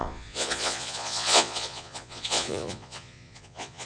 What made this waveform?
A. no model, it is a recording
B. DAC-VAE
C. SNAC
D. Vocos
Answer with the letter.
D